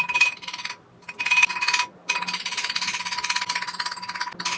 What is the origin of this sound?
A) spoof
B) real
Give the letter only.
B